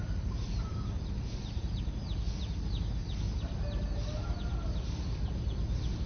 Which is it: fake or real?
real